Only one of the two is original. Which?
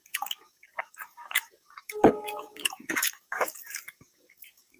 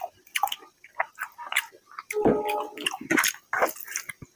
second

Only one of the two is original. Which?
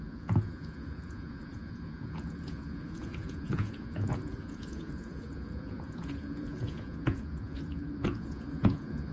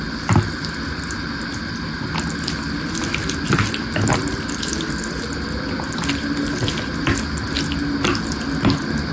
second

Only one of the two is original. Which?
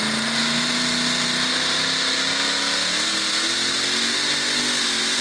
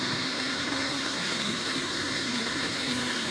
first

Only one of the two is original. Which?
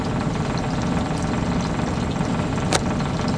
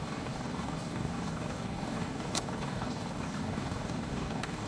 first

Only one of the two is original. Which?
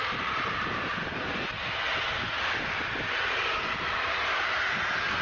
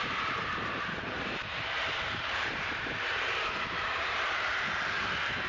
first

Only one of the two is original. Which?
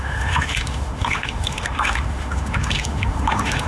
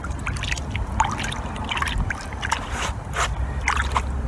second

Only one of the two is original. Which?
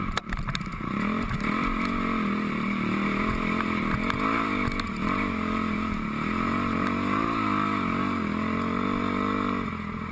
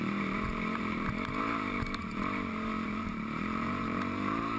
first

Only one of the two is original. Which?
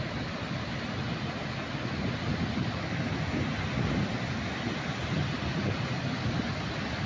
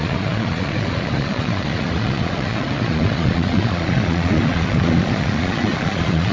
first